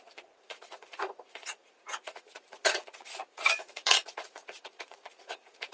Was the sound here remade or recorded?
remade